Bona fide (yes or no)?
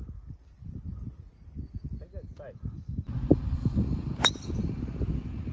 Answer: yes